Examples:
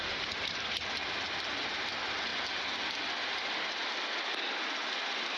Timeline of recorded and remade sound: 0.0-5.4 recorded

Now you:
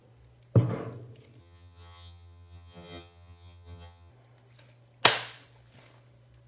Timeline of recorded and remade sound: 0.0-1.4 recorded; 1.4-4.1 remade; 4.1-6.5 recorded

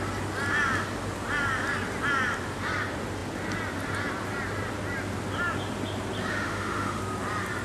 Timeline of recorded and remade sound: 0.0-6.3 recorded; 6.3-7.0 remade; 7.0-7.6 recorded